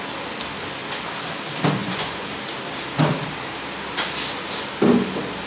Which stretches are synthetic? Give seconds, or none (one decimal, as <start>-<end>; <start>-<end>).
1.8-2.3